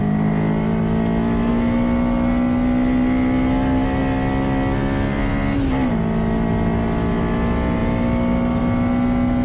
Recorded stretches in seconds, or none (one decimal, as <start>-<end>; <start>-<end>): 0.0-9.4